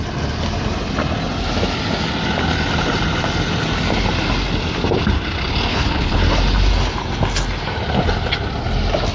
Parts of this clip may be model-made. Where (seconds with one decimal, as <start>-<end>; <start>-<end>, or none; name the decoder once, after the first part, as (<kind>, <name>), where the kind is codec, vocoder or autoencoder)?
5.7-6.2 (codec, HILCodec)